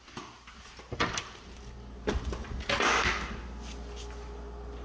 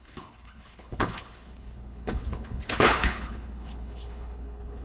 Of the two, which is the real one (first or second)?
first